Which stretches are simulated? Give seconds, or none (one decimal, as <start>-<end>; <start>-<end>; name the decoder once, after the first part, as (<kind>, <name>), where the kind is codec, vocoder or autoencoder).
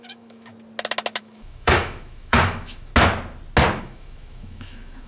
0.0-0.5 (autoencoder, DAC-VAE); 1.2-2.9; 3.8-5.1